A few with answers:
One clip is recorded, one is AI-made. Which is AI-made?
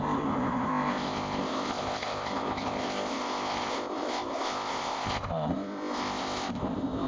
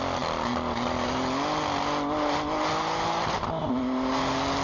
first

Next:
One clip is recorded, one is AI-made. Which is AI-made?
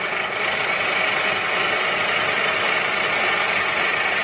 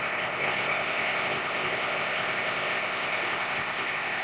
second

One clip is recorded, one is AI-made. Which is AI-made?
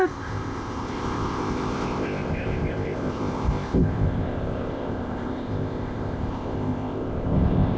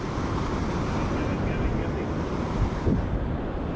first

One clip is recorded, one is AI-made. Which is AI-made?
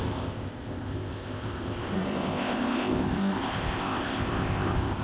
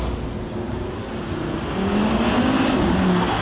first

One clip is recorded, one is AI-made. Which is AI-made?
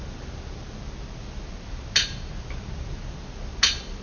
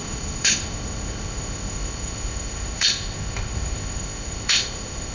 second